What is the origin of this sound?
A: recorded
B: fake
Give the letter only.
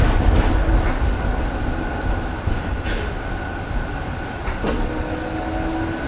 A